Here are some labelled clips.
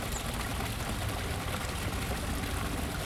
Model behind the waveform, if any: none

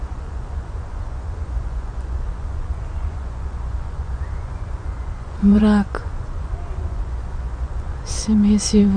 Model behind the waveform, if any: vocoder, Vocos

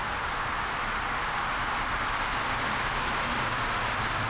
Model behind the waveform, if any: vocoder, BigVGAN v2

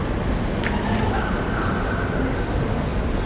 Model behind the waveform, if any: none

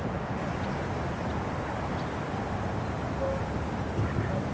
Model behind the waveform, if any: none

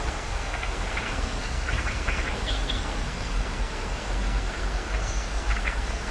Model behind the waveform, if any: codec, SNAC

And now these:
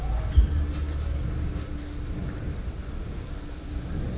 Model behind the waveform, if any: none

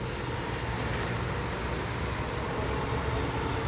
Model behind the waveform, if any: none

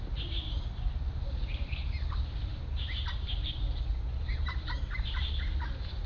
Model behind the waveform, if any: none